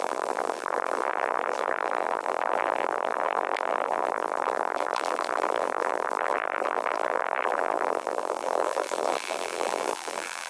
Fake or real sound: fake